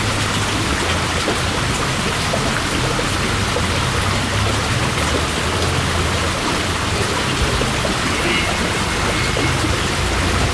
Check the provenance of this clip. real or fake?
real